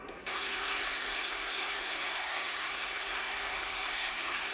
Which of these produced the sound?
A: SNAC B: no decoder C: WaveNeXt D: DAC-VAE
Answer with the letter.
A